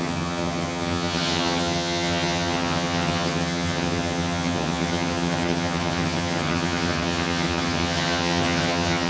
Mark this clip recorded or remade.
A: remade